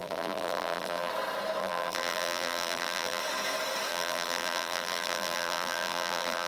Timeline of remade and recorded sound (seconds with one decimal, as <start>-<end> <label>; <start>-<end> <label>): 0.0-1.1 remade; 1.1-1.6 recorded; 1.6-3.2 remade; 3.2-3.9 recorded; 3.9-6.5 remade